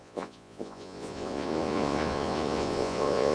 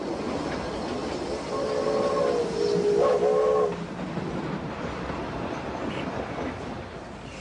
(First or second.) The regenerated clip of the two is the first